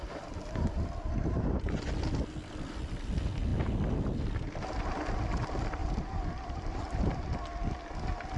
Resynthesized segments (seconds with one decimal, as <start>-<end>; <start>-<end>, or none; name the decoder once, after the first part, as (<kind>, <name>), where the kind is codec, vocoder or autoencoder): 5.8-6.8 (vocoder, BigVGAN v2)